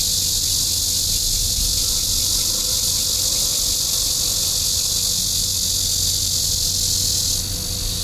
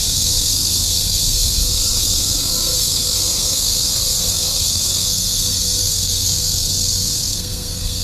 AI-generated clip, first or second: second